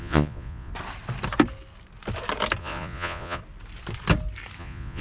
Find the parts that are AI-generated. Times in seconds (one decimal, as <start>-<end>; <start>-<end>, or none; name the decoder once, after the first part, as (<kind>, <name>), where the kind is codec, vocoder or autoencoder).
0.0-0.7 (vocoder, Vocos); 2.6-3.4; 4.6-5.0